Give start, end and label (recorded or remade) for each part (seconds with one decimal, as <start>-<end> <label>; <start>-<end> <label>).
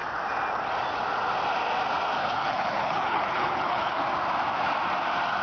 0.0-2.2 recorded; 2.2-4.0 remade; 4.0-5.4 recorded